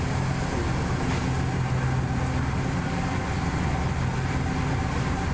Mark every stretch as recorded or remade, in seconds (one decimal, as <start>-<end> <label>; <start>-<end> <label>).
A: 0.0-5.3 recorded